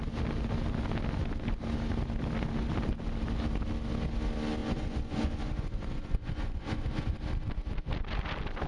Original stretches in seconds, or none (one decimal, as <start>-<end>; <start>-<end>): 0.0-4.6; 7.1-8.7